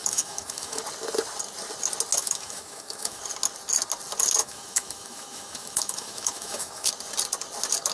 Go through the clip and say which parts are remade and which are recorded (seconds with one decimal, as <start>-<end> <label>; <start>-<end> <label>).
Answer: 0.0-0.8 remade; 0.8-2.2 recorded; 2.2-3.2 remade; 3.2-4.4 recorded; 4.4-6.9 remade; 6.9-7.9 recorded